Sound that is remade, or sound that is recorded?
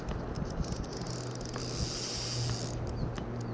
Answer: recorded